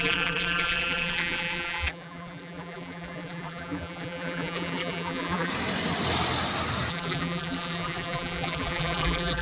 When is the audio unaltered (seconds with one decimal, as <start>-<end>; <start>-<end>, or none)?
5.5-6.9